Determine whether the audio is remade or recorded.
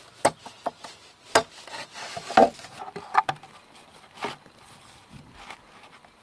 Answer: recorded